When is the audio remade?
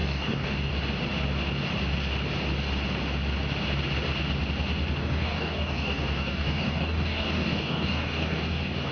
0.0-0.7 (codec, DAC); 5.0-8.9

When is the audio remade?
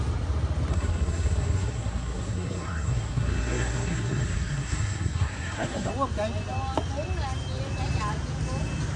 0.7-5.9 (codec, SNAC)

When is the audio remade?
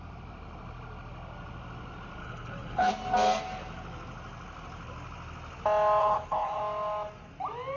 2.2-2.9 (codec, HILCodec); 6.0-6.6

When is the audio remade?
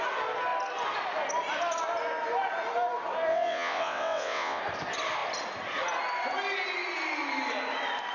3.3-4.6 (vocoder, WaveNeXt)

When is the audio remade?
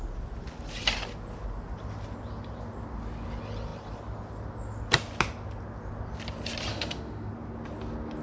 6.7-7.3 (autoencoder, DAC-VAE)